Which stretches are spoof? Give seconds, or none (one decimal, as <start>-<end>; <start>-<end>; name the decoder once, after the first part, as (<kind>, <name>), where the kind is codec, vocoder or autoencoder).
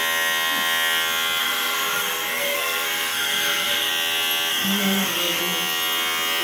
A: 1.4-3.9 (codec, SNAC); 4.5-5.4